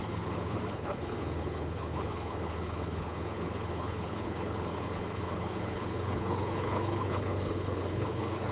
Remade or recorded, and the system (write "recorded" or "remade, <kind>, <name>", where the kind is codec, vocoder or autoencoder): remade, codec, HILCodec